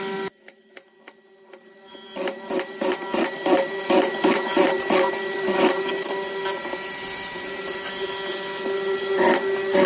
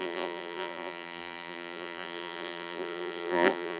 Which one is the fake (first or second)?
second